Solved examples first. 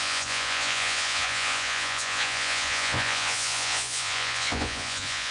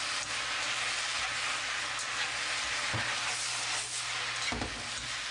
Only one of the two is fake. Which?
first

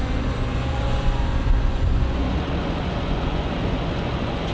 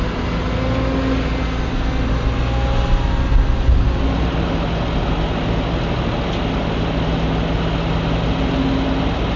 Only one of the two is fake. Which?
first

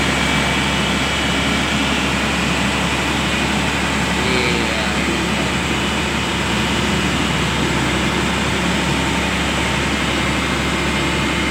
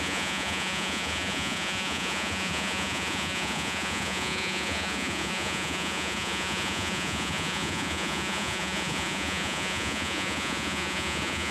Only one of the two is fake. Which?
second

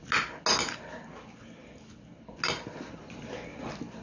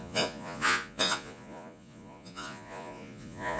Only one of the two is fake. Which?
second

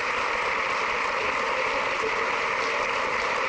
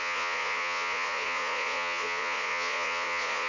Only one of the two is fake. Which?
second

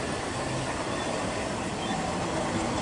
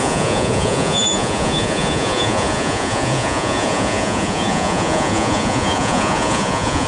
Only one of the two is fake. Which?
second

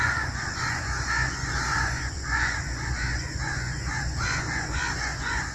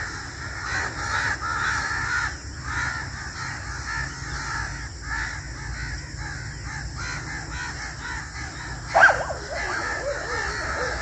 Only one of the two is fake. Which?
first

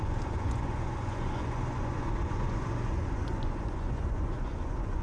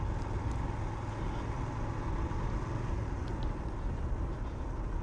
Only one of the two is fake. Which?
first